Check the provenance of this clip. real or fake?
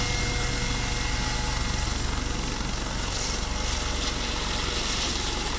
real